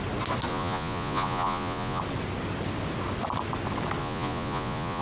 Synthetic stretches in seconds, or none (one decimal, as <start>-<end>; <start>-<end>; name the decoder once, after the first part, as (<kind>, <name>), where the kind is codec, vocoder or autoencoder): 0.5-2.0 (vocoder, Vocos); 4.0-5.0